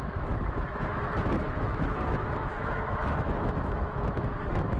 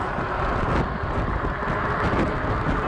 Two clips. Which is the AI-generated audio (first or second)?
first